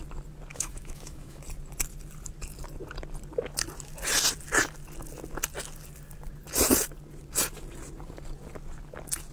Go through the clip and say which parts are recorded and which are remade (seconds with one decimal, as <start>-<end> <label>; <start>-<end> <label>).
0.0-0.5 recorded; 0.5-1.4 remade; 1.4-9.3 recorded